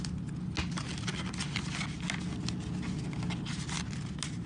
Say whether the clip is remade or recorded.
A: recorded